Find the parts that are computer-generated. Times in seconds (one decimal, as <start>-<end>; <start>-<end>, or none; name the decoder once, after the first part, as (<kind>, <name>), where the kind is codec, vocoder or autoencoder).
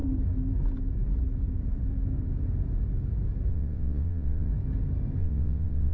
3.5-4.5 (vocoder, WaveNeXt); 5.2-5.9